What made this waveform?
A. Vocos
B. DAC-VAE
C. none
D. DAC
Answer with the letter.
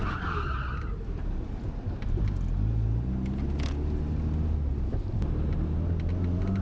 C